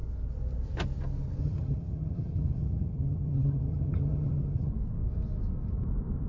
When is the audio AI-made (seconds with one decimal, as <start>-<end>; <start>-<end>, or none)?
1.4-4.7